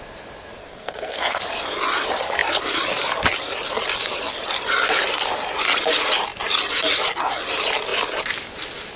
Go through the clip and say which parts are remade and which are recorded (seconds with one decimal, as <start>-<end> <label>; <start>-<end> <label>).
0.0-0.6 recorded; 0.6-1.4 remade; 1.4-9.0 recorded